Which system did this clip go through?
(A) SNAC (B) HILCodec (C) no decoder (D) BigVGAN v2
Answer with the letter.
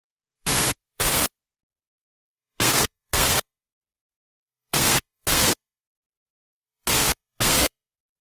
A